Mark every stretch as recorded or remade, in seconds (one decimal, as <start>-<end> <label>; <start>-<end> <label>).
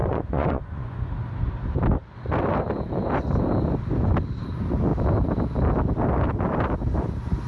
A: 0.0-1.1 remade; 1.1-7.5 recorded